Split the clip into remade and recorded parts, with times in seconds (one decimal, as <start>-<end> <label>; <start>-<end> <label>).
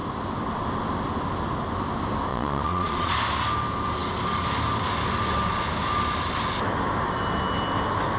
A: 0.0-2.3 recorded; 2.3-3.1 remade; 3.1-8.2 recorded